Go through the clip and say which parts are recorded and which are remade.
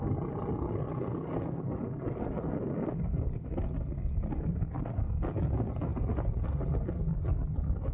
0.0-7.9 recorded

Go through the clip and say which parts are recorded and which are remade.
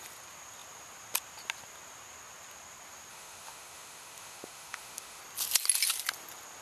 0.0-3.1 recorded; 3.1-5.2 remade; 5.2-6.6 recorded